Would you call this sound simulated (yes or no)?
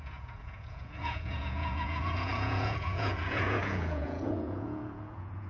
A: yes